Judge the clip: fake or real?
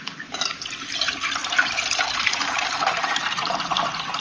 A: fake